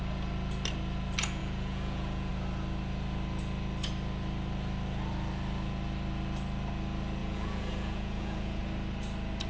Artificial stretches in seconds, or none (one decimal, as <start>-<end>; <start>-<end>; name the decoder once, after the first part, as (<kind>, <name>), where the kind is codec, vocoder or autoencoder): 1.4-2.3 (vocoder, Vocos); 7.2-8.6